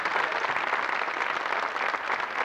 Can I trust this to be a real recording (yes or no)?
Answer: yes